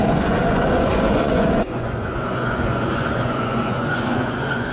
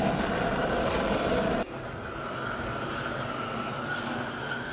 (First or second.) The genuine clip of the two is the second